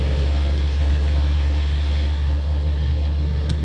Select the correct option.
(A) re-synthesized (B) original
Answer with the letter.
A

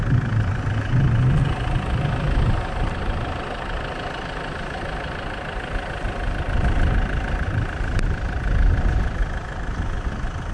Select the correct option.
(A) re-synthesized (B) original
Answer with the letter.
B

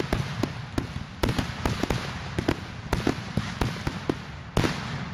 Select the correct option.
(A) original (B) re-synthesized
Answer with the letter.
A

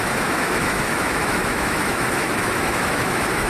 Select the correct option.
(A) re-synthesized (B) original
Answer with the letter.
A